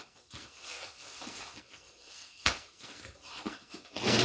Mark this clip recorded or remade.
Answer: remade